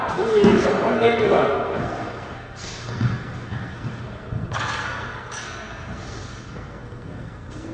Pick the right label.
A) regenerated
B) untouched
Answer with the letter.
A